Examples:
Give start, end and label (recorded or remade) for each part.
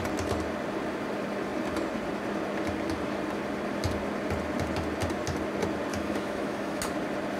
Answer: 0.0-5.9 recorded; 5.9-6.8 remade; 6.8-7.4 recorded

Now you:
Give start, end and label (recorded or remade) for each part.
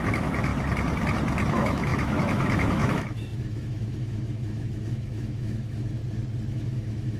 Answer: 0.0-0.5 remade; 0.5-1.5 recorded; 1.5-6.0 remade; 6.0-6.5 recorded; 6.5-7.2 remade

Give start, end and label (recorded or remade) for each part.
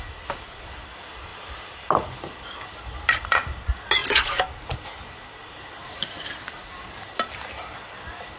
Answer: 0.0-8.4 recorded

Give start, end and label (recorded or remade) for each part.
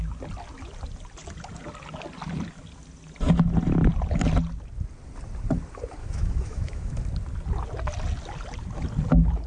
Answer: 0.0-6.0 recorded; 6.0-6.9 remade; 6.9-9.5 recorded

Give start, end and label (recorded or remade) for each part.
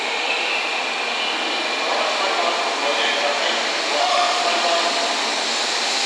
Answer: 0.0-0.5 remade; 0.5-4.0 recorded; 4.0-4.4 remade; 4.4-6.1 recorded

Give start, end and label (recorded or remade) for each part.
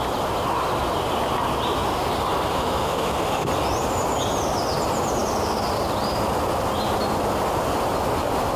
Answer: 0.0-2.5 recorded; 2.5-3.5 remade; 3.5-8.6 recorded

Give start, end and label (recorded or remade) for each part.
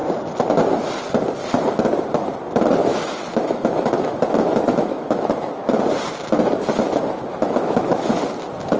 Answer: 0.0-2.9 recorded; 2.9-5.8 remade; 5.8-7.3 recorded; 7.3-8.1 remade; 8.1-8.8 recorded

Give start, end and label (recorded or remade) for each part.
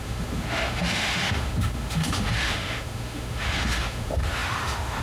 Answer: 0.0-5.0 remade